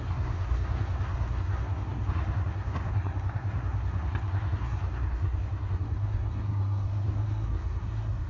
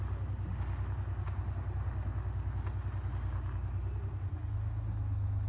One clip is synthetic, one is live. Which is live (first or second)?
second